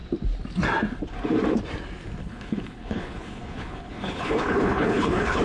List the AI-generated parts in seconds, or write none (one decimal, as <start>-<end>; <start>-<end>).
2.2-5.4